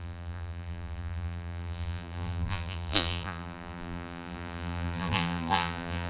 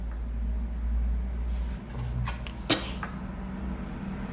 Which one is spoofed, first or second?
first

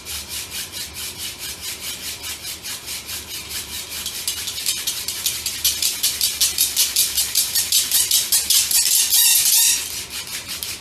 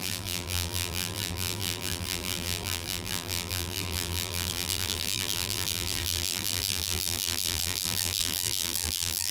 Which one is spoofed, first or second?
second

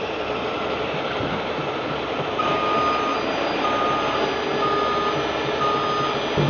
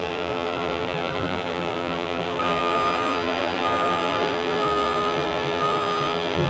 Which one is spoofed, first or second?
second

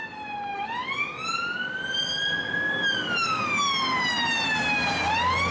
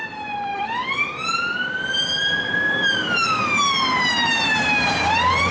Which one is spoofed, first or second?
second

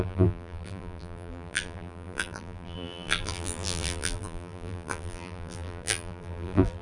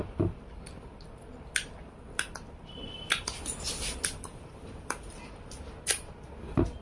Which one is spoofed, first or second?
first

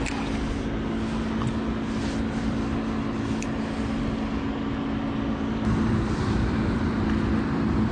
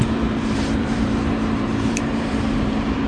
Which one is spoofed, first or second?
second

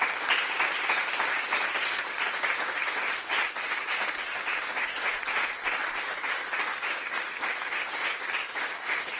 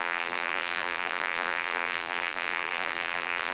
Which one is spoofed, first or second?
second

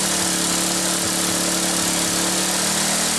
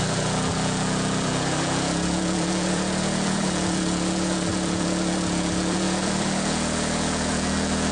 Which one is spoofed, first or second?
second